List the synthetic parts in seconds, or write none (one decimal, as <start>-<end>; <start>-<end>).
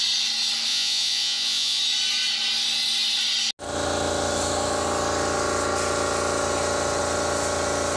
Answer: 0.7-1.8